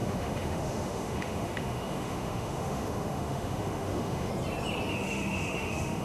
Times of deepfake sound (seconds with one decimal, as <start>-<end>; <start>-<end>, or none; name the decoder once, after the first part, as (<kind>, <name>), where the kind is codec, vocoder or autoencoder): 0.0-4.3 (autoencoder, DAC-VAE); 4.9-6.0